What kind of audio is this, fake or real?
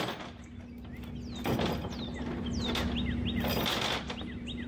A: real